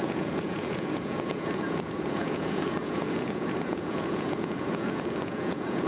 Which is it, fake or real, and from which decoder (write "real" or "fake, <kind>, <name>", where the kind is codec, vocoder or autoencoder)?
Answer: fake, vocoder, Vocos